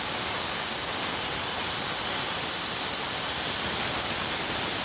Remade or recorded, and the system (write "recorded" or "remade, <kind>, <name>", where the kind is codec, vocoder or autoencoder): recorded